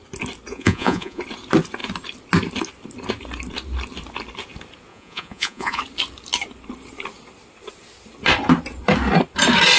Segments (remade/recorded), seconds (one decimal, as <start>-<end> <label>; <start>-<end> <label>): 0.0-0.5 recorded; 0.5-1.2 remade; 1.2-4.9 recorded; 4.9-5.8 remade; 5.8-9.8 recorded